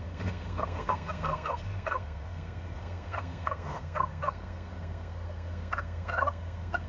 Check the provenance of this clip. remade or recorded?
remade